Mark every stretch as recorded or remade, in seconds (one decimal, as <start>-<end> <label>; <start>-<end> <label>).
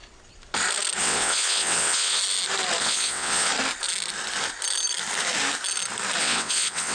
0.0-1.0 recorded; 1.0-2.2 remade; 2.2-2.8 recorded; 2.8-3.5 remade; 3.5-6.2 recorded; 6.2-6.9 remade